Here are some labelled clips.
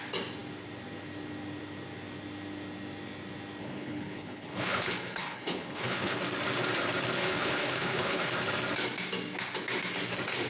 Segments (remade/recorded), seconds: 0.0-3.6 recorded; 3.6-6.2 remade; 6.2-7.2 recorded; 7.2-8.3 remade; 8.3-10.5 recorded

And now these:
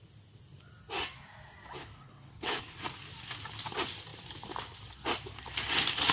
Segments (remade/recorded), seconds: 0.0-1.8 recorded; 1.8-2.8 remade; 2.8-6.1 recorded

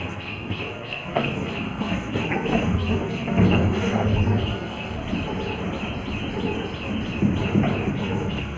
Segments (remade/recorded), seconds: 0.0-5.0 remade; 5.0-7.9 recorded; 7.9-8.6 remade

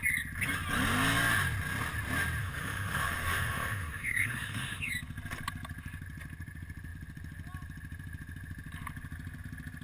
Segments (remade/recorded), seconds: 0.0-2.4 recorded; 2.4-4.9 remade; 4.9-9.8 recorded

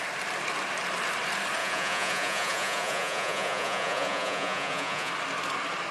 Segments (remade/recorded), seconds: 0.0-1.6 recorded; 1.6-5.1 remade; 5.1-5.9 recorded